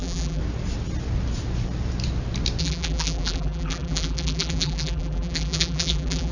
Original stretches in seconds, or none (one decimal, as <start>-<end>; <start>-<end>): 0.4-2.6